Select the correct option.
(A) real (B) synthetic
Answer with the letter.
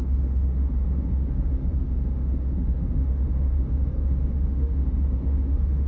B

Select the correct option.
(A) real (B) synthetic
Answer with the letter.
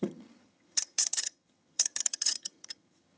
B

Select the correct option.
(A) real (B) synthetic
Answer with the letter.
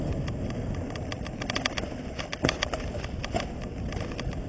A